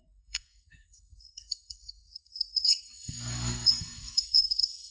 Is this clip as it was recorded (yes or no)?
no